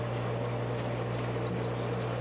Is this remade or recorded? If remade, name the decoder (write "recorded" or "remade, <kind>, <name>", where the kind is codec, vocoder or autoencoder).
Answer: recorded